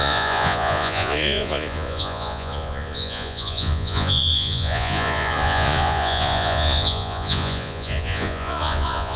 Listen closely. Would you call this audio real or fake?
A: fake